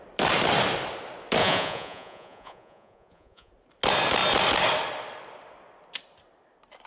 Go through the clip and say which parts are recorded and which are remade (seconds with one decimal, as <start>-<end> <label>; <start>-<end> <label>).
0.0-1.4 recorded; 1.4-3.5 remade; 3.5-6.9 recorded